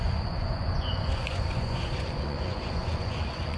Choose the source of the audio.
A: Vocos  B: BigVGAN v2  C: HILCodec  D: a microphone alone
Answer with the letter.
A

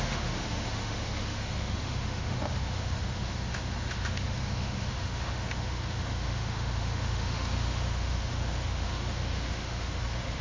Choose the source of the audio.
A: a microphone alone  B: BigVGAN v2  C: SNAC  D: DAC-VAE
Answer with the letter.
D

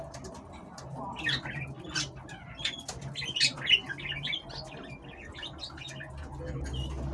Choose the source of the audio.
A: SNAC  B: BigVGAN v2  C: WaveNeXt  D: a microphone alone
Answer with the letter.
D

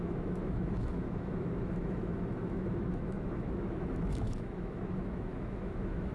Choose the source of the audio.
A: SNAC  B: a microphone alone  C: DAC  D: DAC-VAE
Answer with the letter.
D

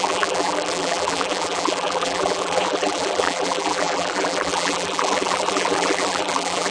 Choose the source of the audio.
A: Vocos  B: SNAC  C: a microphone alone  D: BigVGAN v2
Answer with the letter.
D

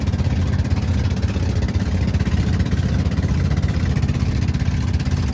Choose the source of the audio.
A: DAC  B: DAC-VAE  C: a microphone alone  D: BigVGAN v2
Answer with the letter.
C